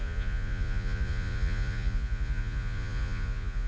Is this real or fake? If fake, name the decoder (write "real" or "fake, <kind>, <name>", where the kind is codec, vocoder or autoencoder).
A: fake, vocoder, Vocos